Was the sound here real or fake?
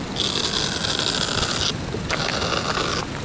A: real